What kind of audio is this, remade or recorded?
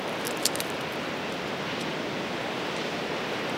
recorded